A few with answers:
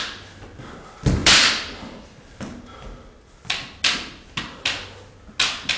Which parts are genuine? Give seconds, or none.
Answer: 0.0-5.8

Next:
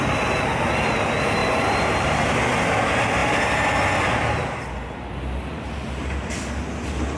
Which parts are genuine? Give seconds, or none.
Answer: 0.0-1.4; 2.4-7.2

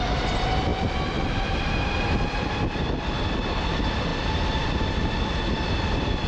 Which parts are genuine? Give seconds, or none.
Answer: 0.0-6.3

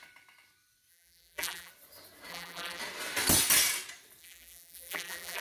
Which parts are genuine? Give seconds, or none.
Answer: 0.0-0.9; 1.7-2.3; 2.8-4.2

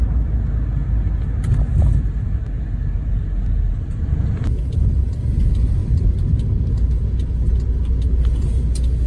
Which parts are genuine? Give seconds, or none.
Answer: 0.0-5.8; 6.5-9.1

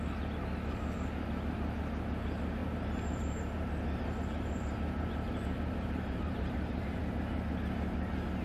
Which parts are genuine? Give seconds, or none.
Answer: 0.0-2.6; 7.0-8.4

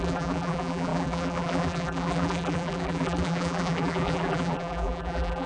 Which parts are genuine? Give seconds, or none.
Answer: none

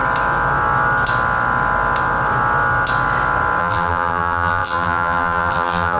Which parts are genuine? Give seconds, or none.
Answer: 0.0-3.6